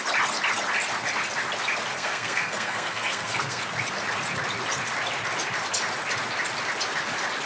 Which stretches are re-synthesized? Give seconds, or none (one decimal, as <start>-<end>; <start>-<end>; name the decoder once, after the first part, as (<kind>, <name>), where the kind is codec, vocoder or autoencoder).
1.9-3.6 (codec, SNAC)